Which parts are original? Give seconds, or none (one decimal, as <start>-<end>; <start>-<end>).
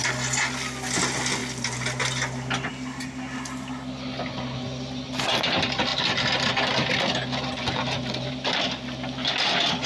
0.0-9.9